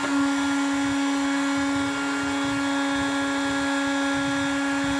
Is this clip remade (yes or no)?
no